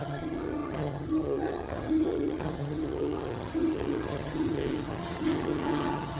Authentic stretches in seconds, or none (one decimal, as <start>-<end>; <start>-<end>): none